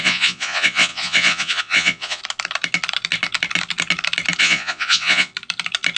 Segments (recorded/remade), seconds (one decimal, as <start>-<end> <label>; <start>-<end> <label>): 0.0-2.2 remade; 2.2-4.4 recorded; 4.4-5.3 remade; 5.3-6.0 recorded